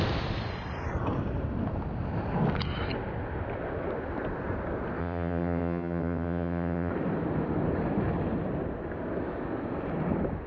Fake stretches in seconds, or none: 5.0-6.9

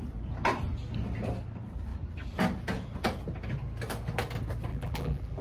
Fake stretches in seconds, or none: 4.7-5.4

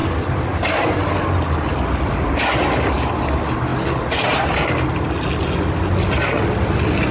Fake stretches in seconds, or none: none